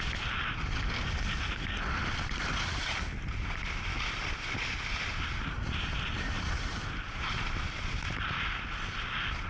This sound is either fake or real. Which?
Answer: real